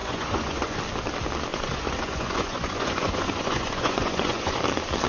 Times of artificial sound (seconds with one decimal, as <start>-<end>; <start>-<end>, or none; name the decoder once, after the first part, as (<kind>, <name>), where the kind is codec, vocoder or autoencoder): 0.0-0.8 (vocoder, Vocos); 1.5-4.6